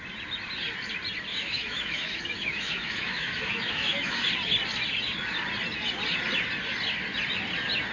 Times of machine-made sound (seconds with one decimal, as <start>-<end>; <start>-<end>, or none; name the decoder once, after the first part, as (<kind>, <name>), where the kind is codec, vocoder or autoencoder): 1.3-4.3 (autoencoder, DAC-VAE)